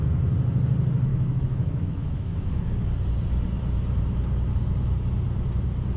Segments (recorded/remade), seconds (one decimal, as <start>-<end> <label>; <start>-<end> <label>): 0.0-1.1 recorded; 1.1-2.6 remade; 2.6-6.0 recorded

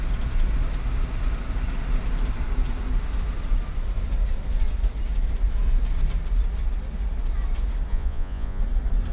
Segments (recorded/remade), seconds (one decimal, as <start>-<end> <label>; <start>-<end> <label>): 0.0-7.9 recorded; 7.9-8.6 remade; 8.6-9.1 recorded

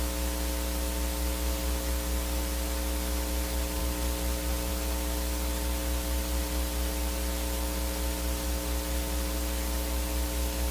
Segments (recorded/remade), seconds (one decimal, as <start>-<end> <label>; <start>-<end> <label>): 0.0-10.7 recorded

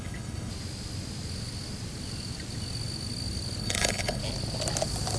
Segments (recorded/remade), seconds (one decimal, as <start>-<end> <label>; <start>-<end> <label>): 0.0-0.5 remade; 0.5-3.6 recorded; 3.6-4.2 remade; 4.2-5.2 recorded